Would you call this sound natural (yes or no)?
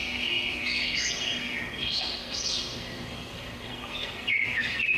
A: no